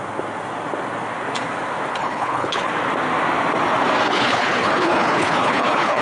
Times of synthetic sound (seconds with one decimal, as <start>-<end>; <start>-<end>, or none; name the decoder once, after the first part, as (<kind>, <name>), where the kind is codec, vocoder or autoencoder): 1.9-2.7 (codec, HILCodec); 4.1-6.0

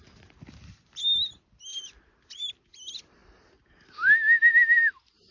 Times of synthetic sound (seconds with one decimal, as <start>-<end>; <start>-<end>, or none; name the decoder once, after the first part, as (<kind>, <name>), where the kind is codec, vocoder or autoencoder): none

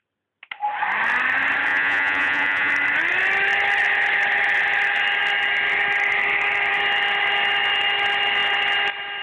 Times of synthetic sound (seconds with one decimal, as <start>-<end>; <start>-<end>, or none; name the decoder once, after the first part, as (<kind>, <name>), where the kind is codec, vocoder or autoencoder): 1.7-2.7 (vocoder, Vocos)

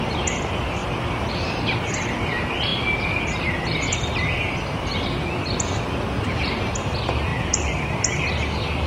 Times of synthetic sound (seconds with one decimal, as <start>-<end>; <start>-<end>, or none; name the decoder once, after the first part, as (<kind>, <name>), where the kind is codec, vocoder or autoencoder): 7.3-8.2 (vocoder, BigVGAN v2)

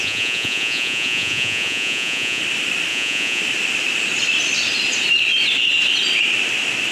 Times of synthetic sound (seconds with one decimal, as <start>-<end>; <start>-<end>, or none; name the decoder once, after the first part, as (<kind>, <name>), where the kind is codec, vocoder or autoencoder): 0.0-2.4 (vocoder, Vocos); 2.9-3.4

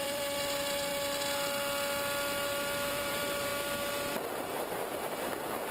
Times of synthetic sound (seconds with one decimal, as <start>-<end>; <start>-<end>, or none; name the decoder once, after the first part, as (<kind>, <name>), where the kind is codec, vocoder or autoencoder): 0.0-0.9 (vocoder, BigVGAN v2); 2.9-3.5; 4.2-4.8

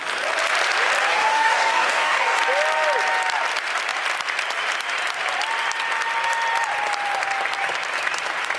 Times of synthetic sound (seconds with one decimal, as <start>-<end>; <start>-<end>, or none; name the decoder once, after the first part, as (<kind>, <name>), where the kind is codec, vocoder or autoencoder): 1.1-2.4 (codec, DAC)

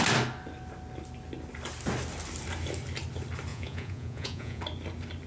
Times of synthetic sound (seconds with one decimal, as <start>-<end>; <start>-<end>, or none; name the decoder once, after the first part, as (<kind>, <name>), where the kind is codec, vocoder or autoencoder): 3.5-4.6 (vocoder, Vocos)